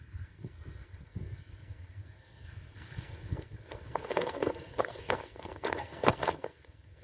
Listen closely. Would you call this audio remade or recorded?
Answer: remade